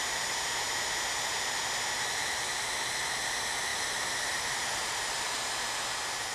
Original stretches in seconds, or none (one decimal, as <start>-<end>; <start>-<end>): 0.0-3.7; 5.5-6.3